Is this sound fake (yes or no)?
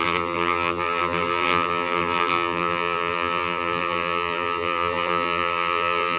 yes